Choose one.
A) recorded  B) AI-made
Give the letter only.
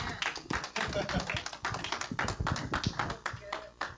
A